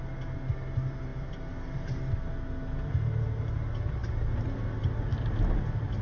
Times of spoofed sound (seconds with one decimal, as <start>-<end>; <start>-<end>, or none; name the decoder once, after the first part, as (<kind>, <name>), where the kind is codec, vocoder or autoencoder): none